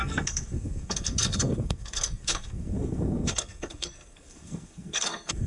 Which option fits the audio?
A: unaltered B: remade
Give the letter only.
B